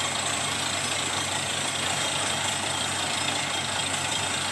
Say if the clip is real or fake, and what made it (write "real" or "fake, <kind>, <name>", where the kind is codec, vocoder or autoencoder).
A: fake, vocoder, BigVGAN v2